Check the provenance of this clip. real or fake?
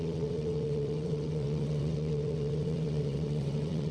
fake